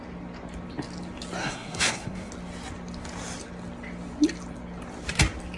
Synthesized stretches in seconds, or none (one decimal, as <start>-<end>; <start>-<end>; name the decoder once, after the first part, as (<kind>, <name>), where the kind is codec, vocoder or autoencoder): 1.4-2.3 (codec, SNAC)